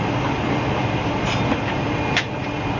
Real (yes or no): yes